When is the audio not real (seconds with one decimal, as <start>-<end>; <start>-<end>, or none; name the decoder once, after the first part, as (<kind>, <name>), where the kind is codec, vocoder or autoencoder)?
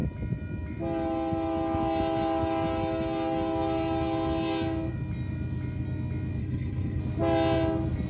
6.4-7.0 (codec, HILCodec)